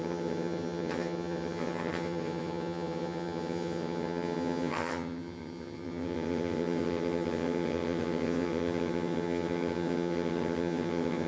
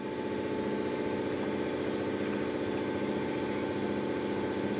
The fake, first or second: first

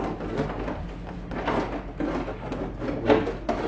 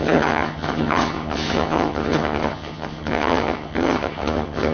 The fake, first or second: second